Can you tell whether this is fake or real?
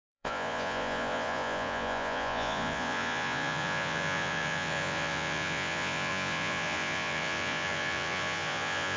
fake